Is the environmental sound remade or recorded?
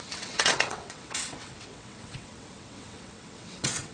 remade